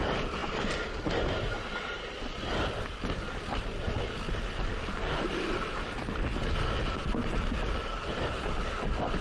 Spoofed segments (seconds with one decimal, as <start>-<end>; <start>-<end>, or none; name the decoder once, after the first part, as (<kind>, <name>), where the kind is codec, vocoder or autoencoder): 7.8-8.3 (vocoder, BigVGAN v2)

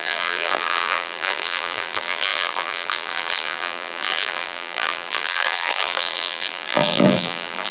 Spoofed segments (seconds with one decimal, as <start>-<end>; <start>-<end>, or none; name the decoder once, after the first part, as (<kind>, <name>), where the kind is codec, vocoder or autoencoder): 0.0-7.7 (vocoder, BigVGAN v2)